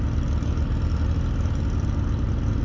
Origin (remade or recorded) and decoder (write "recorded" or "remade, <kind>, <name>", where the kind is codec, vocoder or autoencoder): recorded